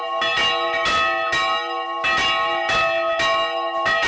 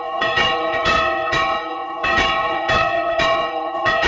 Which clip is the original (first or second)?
first